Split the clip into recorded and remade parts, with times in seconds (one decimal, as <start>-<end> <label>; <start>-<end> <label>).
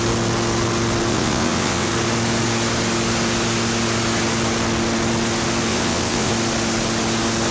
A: 0.0-1.1 recorded; 1.1-1.9 remade; 1.9-5.7 recorded; 5.7-6.3 remade; 6.3-7.5 recorded